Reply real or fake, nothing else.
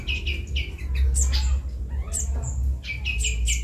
real